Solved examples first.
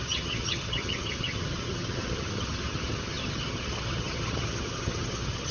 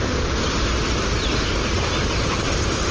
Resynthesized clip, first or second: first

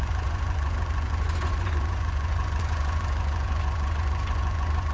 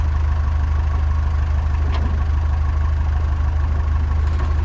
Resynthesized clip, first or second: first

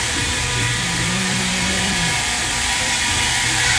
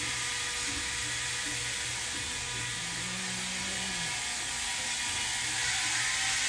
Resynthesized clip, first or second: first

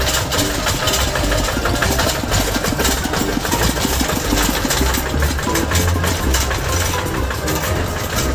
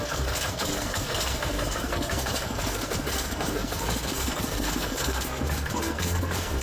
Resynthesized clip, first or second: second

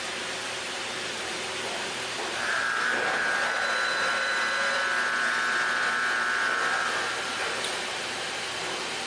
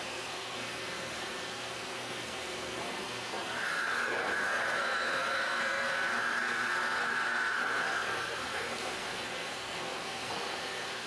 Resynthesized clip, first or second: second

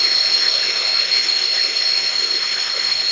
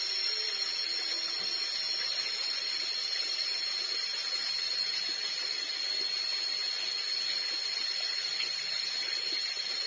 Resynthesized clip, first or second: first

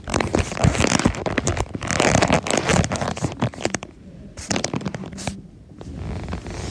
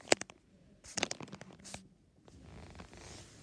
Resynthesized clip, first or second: first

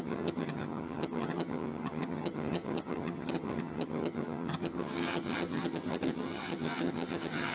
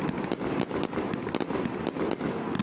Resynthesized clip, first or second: first